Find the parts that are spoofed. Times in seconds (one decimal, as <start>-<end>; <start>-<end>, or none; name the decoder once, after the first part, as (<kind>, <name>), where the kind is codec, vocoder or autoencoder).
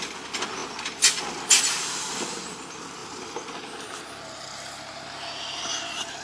none